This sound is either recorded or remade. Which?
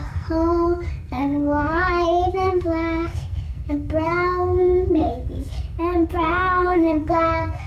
remade